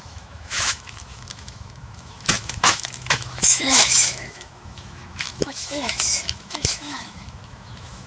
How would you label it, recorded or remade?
remade